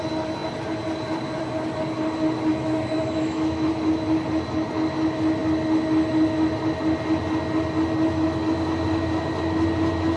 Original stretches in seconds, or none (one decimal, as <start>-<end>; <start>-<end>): 0.0-2.5; 3.7-10.2